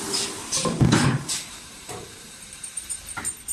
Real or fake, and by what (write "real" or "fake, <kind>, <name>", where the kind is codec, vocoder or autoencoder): fake, vocoder, BigVGAN v2